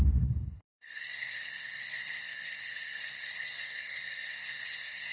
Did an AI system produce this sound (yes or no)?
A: yes